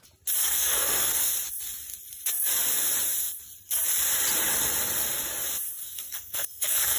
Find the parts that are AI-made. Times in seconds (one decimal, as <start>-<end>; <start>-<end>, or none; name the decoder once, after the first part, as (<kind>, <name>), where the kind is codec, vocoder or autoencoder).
0.4-1.3 (codec, SNAC); 5.8-7.0